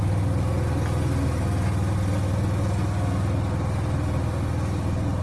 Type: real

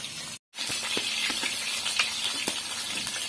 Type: real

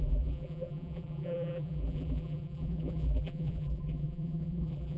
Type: fake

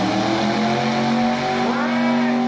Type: real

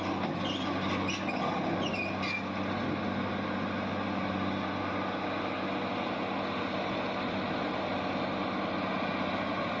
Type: real